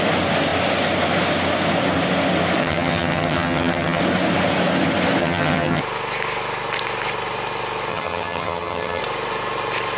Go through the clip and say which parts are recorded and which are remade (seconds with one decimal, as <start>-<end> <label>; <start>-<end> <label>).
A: 0.0-2.6 recorded; 2.6-4.0 remade; 4.0-5.2 recorded; 5.2-5.8 remade; 5.8-7.9 recorded; 7.9-9.0 remade; 9.0-10.0 recorded